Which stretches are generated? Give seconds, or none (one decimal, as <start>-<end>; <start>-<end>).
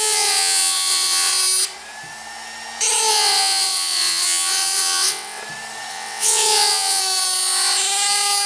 0.0-1.3; 3.1-5.4; 5.9-7.0